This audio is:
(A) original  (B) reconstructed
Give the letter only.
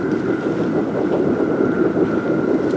A